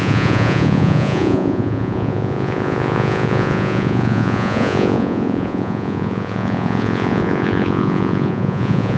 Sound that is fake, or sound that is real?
fake